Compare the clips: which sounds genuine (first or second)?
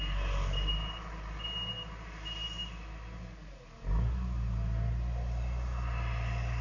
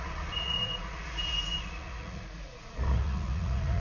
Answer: first